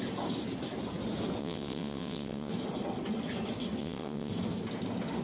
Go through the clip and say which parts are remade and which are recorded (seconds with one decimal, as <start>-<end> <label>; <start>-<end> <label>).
0.0-1.4 recorded; 1.4-2.5 remade; 2.5-3.8 recorded; 3.8-4.3 remade; 4.3-5.2 recorded